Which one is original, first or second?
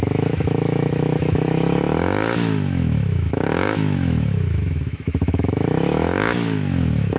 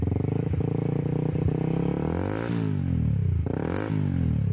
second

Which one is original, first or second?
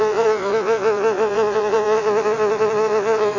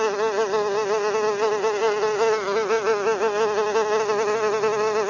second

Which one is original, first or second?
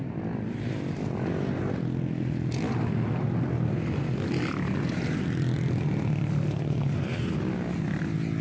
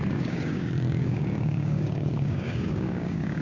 first